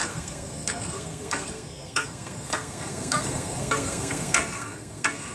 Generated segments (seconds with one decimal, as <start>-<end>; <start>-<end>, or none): 0.0-5.3